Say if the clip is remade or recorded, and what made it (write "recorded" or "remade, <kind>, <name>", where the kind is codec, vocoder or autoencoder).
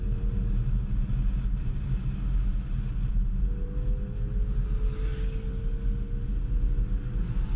recorded